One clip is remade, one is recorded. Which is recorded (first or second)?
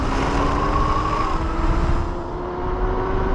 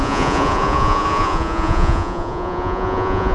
first